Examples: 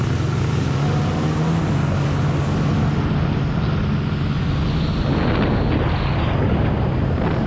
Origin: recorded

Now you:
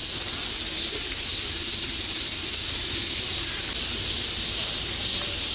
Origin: recorded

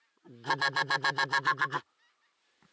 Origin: recorded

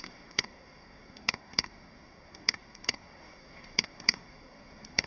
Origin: remade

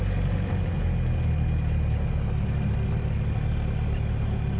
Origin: recorded